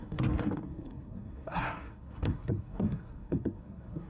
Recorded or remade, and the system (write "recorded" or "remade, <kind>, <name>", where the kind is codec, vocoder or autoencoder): remade, codec, SNAC